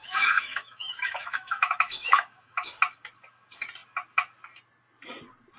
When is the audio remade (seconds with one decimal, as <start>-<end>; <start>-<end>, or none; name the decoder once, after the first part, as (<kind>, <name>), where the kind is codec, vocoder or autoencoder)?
0.0-2.7 (autoencoder, DAC-VAE)